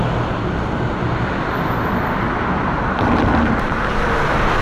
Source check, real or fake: real